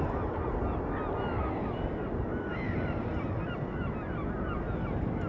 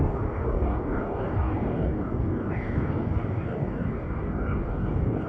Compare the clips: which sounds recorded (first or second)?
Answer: first